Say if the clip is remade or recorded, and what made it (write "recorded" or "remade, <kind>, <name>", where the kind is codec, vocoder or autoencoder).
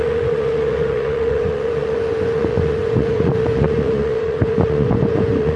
remade, vocoder, Vocos